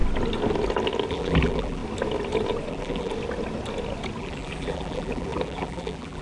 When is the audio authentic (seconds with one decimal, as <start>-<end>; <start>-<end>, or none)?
0.0-1.1; 1.8-2.7; 3.1-4.2